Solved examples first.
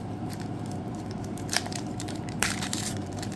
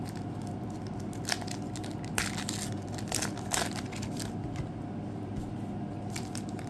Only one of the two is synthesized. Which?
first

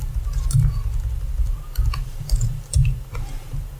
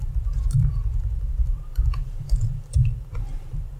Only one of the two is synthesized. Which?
second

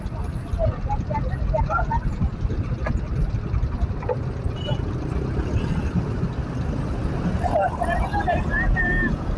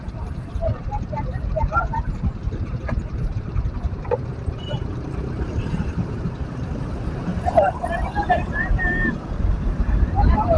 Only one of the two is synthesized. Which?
second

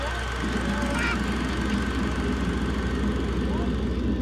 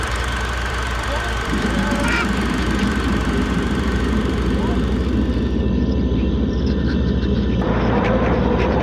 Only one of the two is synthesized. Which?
second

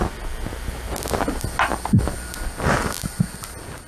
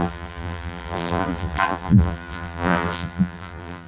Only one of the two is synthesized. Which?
second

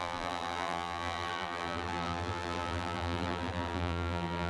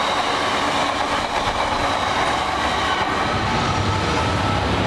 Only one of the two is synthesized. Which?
first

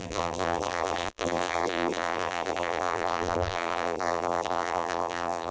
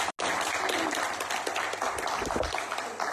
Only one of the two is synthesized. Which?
first